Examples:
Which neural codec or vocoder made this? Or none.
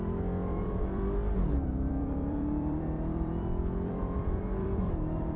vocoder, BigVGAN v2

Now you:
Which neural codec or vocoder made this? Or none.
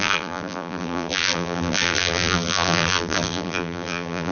vocoder, BigVGAN v2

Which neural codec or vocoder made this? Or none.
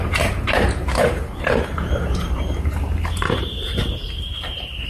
vocoder, BigVGAN v2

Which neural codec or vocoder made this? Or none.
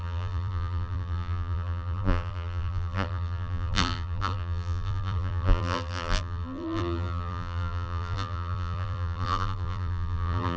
vocoder, BigVGAN v2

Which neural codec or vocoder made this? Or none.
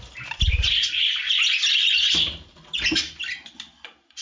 none